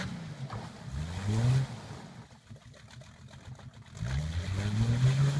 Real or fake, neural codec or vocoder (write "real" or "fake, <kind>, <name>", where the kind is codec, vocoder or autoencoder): real